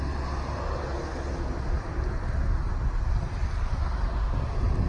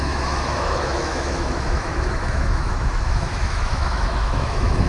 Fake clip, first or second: second